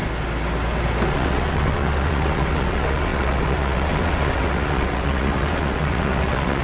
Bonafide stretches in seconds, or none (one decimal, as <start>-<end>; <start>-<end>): 0.0-1.1